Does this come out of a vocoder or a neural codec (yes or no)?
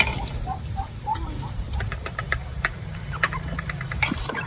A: yes